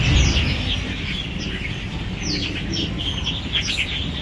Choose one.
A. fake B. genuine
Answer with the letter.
B